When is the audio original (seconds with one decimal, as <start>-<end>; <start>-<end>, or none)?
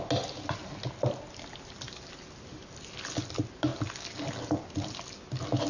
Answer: 0.0-5.7